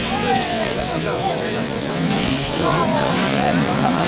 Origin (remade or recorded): remade